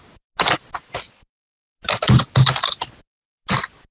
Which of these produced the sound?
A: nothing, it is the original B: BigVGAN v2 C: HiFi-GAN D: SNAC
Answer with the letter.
A